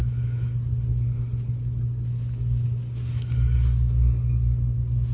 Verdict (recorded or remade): recorded